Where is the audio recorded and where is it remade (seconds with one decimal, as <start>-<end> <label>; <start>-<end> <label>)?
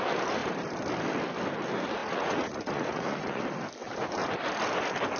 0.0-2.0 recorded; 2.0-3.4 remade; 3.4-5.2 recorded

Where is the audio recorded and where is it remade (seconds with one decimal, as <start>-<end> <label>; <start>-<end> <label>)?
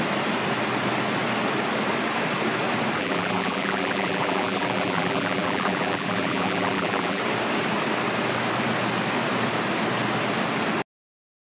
0.0-3.0 recorded; 3.0-7.2 remade; 7.2-11.5 recorded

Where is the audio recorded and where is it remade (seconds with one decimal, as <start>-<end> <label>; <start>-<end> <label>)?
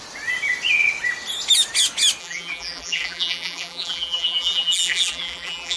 0.0-2.2 recorded; 2.2-5.8 remade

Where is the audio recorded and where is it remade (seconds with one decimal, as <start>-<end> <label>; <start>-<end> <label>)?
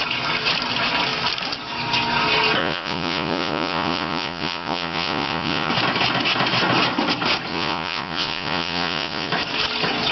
0.0-2.6 recorded; 2.6-5.7 remade; 5.7-7.5 recorded; 7.5-9.3 remade; 9.3-10.1 recorded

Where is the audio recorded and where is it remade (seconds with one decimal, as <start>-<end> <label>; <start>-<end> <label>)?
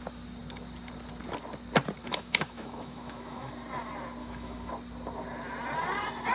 0.0-2.0 recorded; 2.0-3.5 remade; 3.5-4.2 recorded; 4.2-4.7 remade; 4.7-6.3 recorded